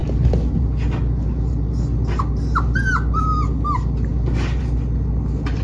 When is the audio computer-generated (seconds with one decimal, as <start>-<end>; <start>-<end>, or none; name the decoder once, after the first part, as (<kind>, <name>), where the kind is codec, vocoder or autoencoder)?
none

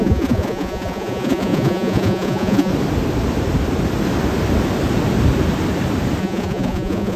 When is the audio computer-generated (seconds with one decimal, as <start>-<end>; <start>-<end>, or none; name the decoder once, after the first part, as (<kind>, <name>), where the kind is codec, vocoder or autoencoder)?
0.0-2.7 (vocoder, Vocos); 6.2-7.2

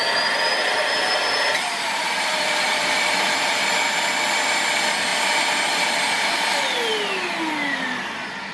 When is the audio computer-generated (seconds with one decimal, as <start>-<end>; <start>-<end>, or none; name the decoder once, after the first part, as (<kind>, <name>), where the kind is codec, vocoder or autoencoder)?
1.5-3.7 (vocoder, BigVGAN v2)

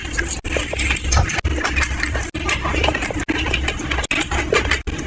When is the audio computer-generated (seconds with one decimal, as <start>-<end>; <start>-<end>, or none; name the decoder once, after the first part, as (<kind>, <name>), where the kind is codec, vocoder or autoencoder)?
none

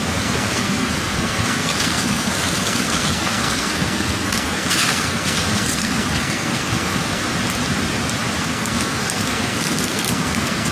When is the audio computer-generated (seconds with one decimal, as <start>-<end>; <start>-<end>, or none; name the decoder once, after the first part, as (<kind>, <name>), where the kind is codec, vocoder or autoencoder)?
0.0-7.2 (codec, SNAC); 8.4-10.7

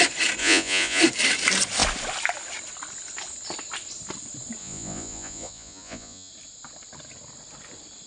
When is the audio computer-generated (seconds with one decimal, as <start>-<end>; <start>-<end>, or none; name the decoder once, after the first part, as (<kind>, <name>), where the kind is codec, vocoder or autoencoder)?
0.4-1.0 (vocoder, Vocos); 4.6-6.3